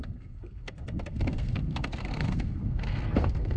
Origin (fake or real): fake